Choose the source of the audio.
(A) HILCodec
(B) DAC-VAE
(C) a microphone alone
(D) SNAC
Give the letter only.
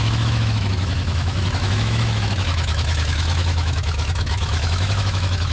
B